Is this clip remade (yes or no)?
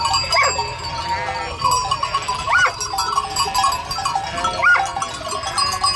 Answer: no